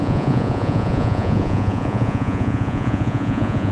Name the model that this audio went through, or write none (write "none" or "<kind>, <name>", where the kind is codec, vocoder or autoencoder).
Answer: vocoder, Vocos